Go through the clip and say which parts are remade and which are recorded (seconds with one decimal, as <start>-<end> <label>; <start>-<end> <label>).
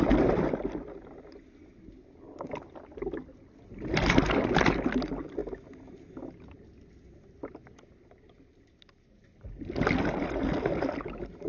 0.0-11.5 recorded